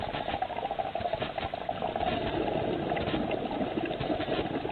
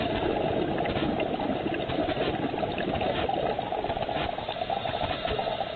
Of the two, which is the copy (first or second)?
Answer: second